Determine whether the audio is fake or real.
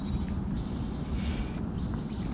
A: real